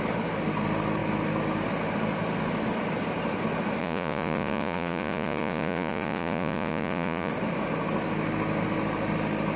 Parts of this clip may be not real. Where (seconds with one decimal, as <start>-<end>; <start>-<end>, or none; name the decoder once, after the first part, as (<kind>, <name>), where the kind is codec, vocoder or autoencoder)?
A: 3.8-7.3 (vocoder, Vocos)